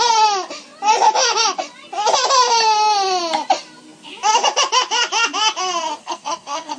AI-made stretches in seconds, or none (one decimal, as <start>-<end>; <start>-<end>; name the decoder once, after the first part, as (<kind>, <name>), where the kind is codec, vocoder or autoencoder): 6.0-6.8 (codec, SNAC)